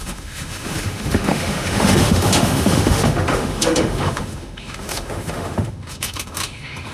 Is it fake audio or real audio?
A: fake